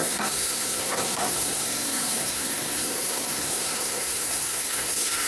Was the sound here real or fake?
fake